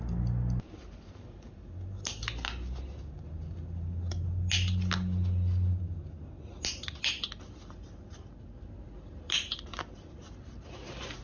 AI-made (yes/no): no